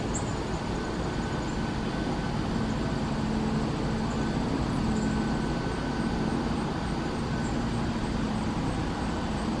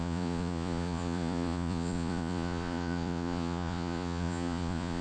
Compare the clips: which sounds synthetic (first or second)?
second